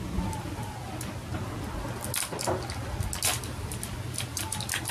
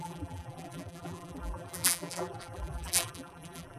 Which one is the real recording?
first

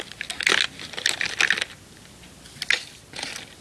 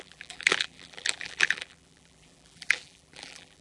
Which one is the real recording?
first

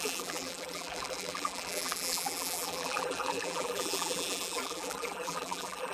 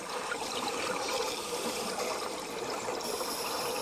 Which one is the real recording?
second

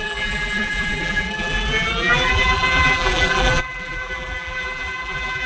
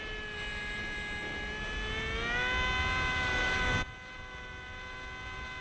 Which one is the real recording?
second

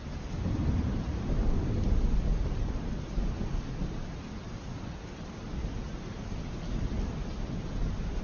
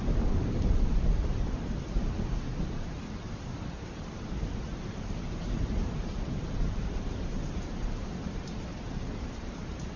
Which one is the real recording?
first